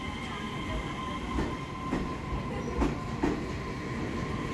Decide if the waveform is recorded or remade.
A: recorded